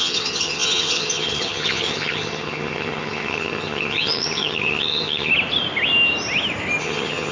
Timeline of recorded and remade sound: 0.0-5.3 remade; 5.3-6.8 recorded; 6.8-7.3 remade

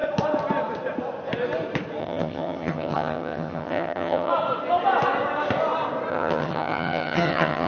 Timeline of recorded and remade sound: 0.0-2.0 recorded; 2.0-4.3 remade; 4.3-6.1 recorded; 6.1-7.7 remade

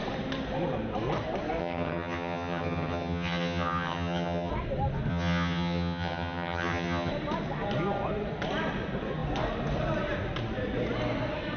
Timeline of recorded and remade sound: 0.0-1.6 recorded; 1.6-4.5 remade; 4.5-5.1 recorded; 5.1-7.1 remade; 7.1-11.6 recorded